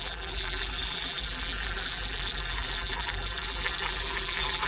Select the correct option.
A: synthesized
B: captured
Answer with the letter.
A